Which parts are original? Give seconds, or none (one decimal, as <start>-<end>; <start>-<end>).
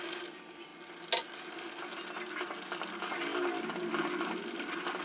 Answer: 0.0-5.0